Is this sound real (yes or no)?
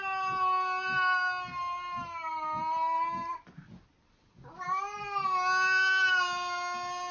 yes